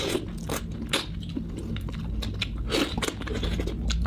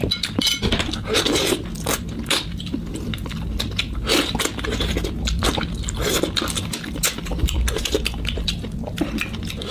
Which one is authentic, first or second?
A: first